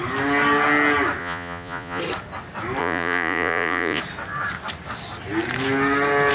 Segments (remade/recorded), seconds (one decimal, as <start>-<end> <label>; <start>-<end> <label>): 0.0-1.2 recorded; 1.2-2.0 remade; 2.0-2.8 recorded; 2.8-4.0 remade; 4.0-6.3 recorded